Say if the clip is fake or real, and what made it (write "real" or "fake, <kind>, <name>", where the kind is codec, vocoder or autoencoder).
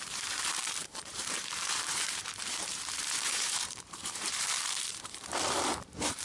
fake, vocoder, BigVGAN v2